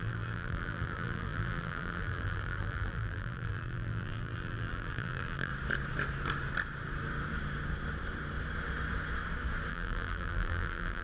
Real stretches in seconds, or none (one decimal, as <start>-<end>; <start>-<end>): 5.5-9.7